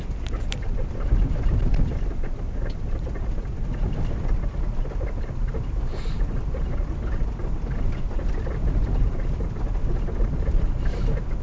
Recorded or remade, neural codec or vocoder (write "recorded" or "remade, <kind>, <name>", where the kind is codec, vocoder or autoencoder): remade, vocoder, BigVGAN v2